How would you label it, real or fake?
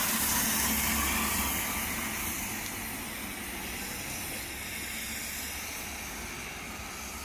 real